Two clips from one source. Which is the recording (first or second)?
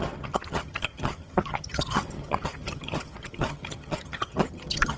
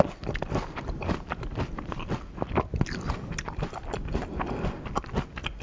second